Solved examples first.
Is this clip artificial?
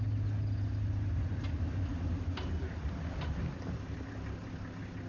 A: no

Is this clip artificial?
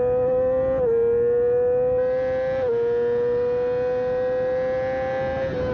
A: no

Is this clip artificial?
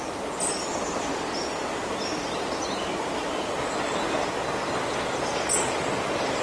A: no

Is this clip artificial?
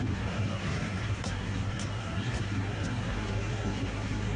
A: yes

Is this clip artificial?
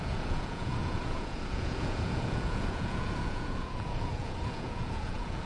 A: yes